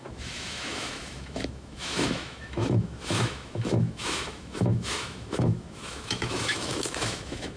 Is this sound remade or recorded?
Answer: remade